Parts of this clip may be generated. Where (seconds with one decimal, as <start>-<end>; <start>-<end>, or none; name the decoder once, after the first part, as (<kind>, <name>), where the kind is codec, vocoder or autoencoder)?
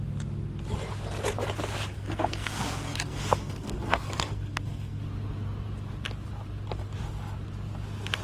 1.9-5.0 (codec, SNAC)